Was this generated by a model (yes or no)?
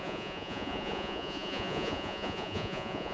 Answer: yes